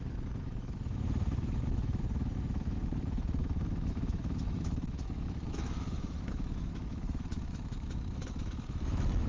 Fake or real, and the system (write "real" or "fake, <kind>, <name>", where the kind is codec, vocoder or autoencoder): fake, autoencoder, DAC-VAE